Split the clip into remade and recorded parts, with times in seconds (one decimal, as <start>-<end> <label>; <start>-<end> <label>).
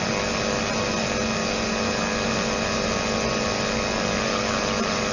0.0-5.1 recorded